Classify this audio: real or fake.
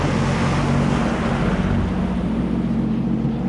real